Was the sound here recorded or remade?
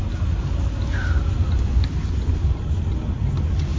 recorded